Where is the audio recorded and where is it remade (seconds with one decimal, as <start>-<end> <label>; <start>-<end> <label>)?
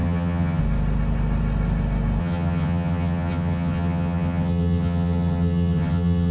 0.0-0.6 remade; 0.6-2.2 recorded; 2.2-6.3 remade